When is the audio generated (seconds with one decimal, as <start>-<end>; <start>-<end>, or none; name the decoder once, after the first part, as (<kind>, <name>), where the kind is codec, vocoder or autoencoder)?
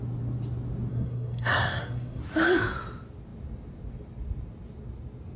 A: 0.9-2.2 (codec, SNAC)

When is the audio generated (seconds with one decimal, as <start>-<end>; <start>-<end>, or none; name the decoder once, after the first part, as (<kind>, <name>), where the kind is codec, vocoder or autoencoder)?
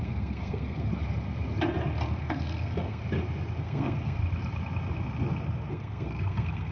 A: 0.0-0.9 (codec, SNAC); 2.2-3.0; 3.6-4.2; 5.7-6.7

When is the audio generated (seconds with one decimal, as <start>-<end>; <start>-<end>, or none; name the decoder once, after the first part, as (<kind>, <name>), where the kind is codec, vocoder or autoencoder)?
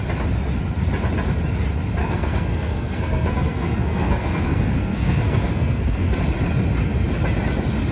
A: 2.0-6.2 (codec, SNAC)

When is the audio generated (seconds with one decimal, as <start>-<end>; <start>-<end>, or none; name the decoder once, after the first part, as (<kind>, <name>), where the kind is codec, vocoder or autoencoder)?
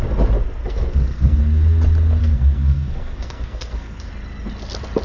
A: 0.6-1.4 (codec, SNAC); 2.2-4.1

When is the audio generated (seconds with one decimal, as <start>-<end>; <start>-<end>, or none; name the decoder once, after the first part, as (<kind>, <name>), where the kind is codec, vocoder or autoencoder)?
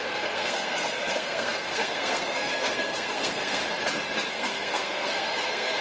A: 0.0-3.6 (codec, SNAC); 4.3-5.8